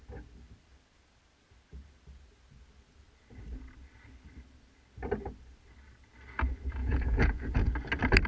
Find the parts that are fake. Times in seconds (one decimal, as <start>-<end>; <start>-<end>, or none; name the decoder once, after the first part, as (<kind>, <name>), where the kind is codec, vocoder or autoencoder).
6.8-7.7 (vocoder, Vocos)